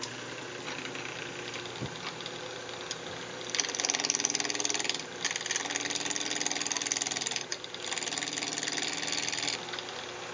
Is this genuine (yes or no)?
yes